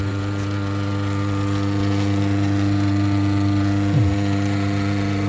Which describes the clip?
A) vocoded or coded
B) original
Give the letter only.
A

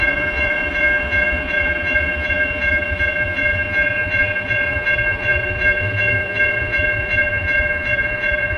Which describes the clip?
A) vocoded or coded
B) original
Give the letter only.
A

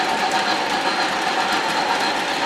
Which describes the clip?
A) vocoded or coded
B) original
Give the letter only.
B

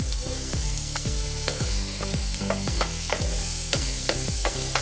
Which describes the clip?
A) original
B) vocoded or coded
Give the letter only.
B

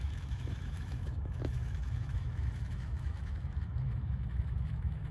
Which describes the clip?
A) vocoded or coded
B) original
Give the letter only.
A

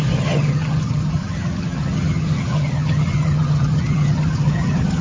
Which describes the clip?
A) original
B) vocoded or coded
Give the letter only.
B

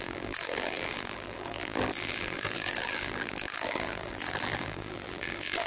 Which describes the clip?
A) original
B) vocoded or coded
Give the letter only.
B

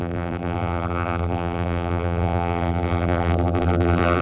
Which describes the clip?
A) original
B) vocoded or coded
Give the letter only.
B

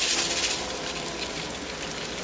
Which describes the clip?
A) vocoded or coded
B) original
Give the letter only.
B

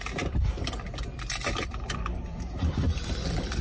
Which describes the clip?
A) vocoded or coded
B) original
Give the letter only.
A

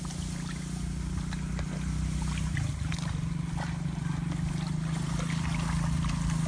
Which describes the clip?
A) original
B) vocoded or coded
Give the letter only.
A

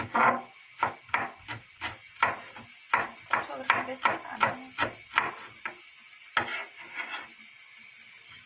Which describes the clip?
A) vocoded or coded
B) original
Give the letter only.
B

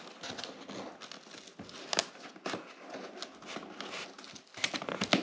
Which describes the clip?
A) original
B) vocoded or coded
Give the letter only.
A